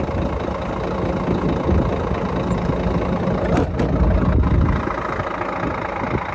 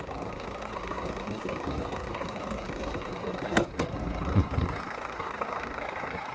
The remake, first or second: second